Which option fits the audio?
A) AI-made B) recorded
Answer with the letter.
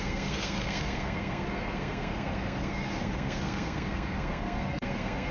A